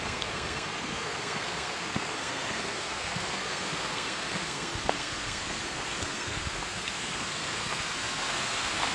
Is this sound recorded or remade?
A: remade